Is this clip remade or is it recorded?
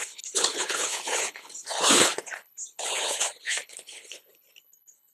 remade